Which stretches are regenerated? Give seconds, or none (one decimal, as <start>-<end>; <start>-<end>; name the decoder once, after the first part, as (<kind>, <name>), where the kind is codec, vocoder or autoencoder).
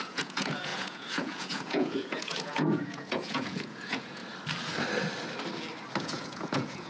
0.0-4.2 (vocoder, Vocos); 6.0-6.9